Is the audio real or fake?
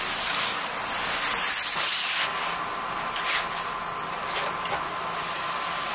real